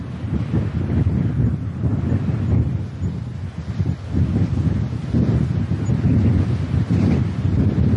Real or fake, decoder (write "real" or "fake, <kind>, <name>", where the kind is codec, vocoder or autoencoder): real